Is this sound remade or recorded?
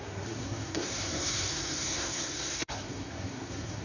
remade